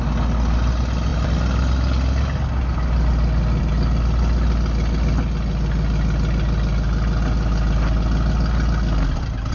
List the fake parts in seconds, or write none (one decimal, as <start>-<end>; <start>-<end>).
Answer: none

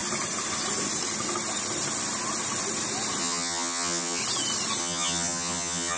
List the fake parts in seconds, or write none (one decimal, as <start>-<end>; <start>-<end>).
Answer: 3.2-4.2; 4.8-6.0

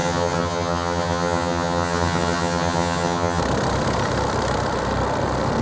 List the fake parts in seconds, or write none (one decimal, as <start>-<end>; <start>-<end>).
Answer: 0.0-3.4

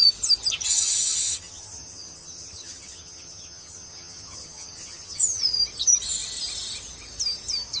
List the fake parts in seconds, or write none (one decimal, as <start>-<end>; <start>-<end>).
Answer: 0.7-5.4

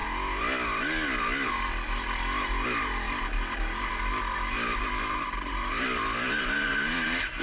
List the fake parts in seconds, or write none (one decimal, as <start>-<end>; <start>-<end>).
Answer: none

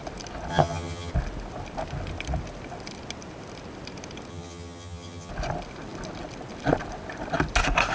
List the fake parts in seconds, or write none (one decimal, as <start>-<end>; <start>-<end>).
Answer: 0.5-1.1; 4.3-5.3

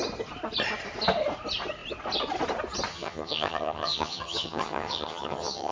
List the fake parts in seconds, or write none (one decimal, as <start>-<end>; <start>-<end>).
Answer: 2.9-5.7

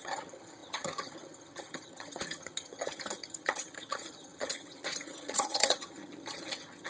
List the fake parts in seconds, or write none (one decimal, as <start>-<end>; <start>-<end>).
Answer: 0.0-6.9